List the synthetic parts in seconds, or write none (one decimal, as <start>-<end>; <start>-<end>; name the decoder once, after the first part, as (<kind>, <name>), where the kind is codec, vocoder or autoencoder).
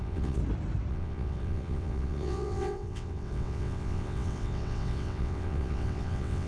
0.0-0.4 (vocoder, WaveNeXt); 0.9-6.5